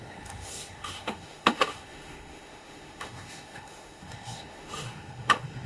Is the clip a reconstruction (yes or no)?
yes